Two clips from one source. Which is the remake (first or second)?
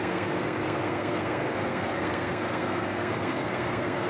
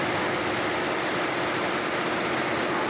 first